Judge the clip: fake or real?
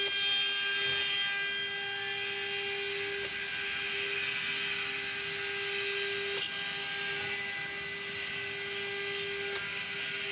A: real